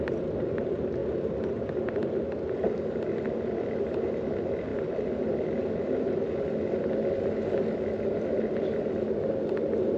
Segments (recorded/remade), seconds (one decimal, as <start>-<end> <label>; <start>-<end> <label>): 0.0-10.0 recorded